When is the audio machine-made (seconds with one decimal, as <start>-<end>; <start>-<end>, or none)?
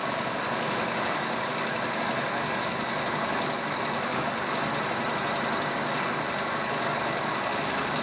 0.0-4.7; 5.7-8.0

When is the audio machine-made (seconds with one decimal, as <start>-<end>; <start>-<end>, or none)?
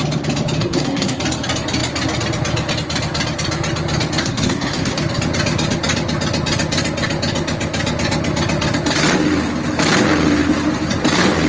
0.6-1.2; 4.2-5.0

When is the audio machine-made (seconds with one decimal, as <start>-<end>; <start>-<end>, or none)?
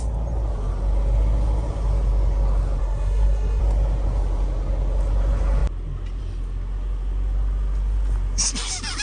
2.8-3.6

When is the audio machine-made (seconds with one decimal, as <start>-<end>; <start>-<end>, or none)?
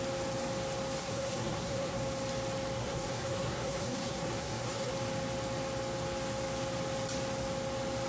1.0-2.0; 2.8-4.9